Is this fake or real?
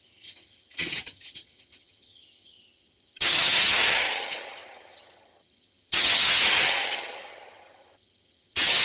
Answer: fake